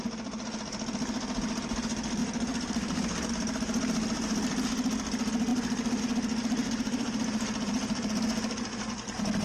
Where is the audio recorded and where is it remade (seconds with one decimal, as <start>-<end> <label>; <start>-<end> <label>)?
0.0-2.2 recorded; 2.2-3.3 remade; 3.3-5.5 recorded; 5.5-6.0 remade; 6.0-6.6 recorded; 6.6-8.1 remade; 8.1-9.4 recorded